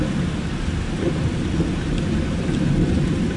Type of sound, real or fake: real